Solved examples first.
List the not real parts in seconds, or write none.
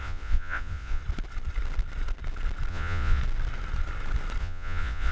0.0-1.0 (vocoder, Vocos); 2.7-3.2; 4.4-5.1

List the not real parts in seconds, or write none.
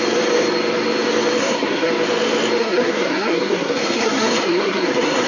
1.4-1.9 (codec, SNAC); 2.6-5.3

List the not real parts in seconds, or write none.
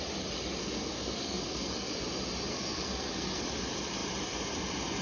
0.6-1.9 (codec, SNAC); 2.5-3.4